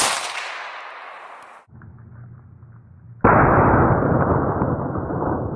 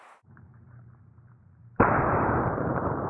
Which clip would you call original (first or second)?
first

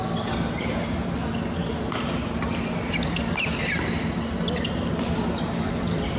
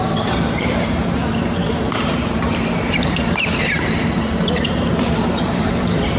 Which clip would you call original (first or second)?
first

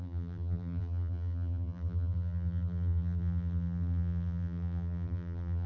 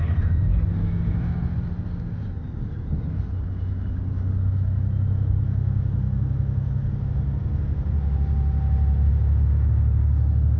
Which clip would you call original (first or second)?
second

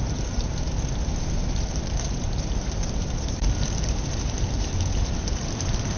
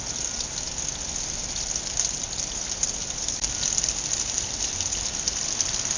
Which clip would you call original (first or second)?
second